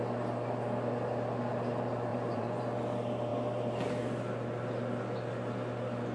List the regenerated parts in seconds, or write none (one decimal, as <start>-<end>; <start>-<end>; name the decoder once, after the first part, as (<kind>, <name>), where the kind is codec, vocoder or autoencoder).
2.1-2.6 (vocoder, Vocos)